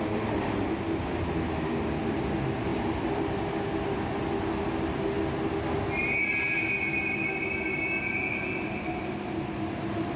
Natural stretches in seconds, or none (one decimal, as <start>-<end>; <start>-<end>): 0.0-10.2